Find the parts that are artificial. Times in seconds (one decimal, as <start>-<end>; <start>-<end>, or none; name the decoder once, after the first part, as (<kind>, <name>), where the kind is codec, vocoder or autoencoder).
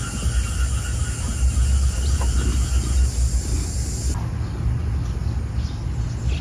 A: none